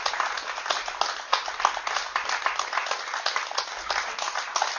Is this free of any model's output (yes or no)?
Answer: yes